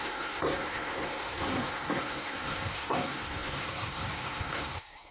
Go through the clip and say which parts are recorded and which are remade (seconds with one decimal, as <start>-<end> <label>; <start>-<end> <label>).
0.0-5.1 remade